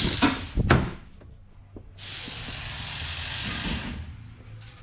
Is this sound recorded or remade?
recorded